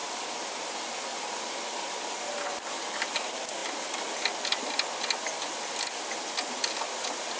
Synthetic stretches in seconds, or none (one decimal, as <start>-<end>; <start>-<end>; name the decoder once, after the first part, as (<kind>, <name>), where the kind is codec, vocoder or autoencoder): none